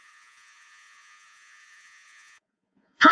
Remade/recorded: remade